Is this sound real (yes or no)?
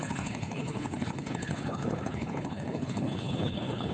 no